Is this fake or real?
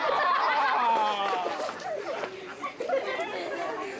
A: real